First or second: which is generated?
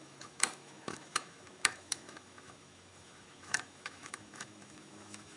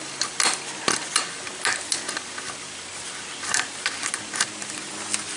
first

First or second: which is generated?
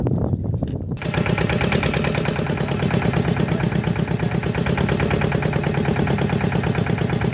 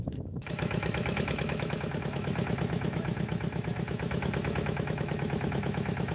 second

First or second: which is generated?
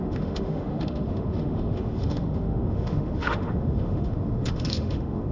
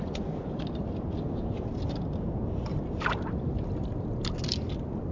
first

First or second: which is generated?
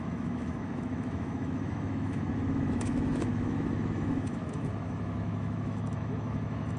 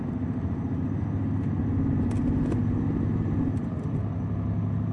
first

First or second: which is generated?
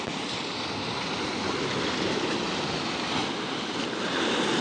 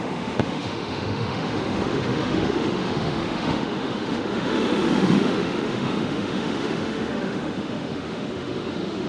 second